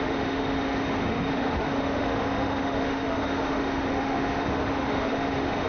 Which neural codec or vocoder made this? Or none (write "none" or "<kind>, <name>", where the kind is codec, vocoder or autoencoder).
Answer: autoencoder, DAC-VAE